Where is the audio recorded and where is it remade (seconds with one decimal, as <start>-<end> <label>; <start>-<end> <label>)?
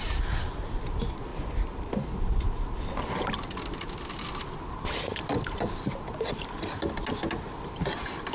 0.0-1.3 recorded; 1.3-6.3 remade; 6.3-8.3 recorded